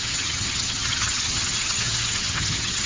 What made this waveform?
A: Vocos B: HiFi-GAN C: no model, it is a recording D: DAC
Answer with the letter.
B